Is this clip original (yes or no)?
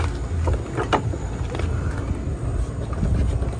yes